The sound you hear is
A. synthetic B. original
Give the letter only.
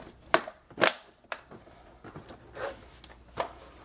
A